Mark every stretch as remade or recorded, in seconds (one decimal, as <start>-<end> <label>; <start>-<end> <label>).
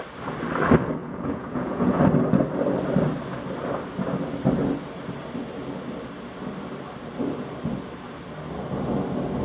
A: 0.0-1.0 recorded; 1.0-2.0 remade; 2.0-9.4 recorded